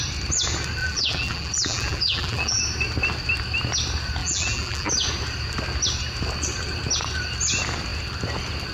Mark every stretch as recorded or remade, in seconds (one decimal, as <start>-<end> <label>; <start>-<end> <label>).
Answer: 0.0-0.8 recorded; 0.8-2.6 remade; 2.6-4.2 recorded; 4.2-4.9 remade; 4.9-8.7 recorded